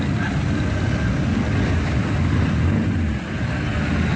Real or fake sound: real